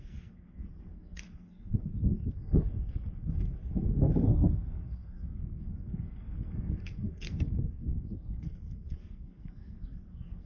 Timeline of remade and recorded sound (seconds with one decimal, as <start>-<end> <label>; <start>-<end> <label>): 0.0-10.5 remade